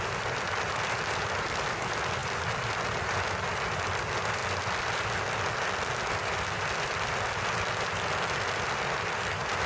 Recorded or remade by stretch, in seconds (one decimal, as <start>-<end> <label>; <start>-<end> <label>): 0.0-9.7 recorded